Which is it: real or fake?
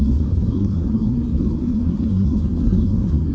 fake